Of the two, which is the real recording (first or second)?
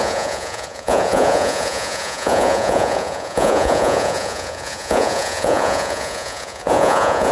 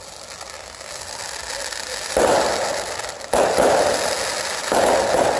second